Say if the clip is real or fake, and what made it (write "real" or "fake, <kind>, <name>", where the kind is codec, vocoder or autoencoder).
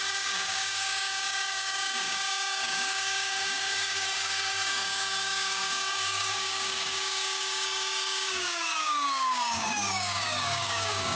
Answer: fake, codec, DAC